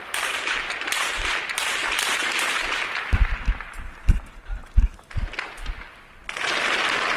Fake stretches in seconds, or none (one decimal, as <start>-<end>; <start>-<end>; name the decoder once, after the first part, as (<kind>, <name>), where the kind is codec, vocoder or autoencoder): 0.0-1.8 (vocoder, BigVGAN v2); 3.1-6.2; 6.8-7.2